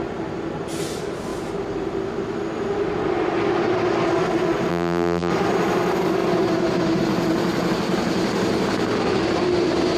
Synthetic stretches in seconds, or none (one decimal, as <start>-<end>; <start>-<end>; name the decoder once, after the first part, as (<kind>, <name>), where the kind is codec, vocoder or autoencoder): 4.7-5.3 (vocoder, BigVGAN v2)